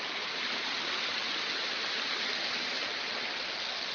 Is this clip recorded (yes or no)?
yes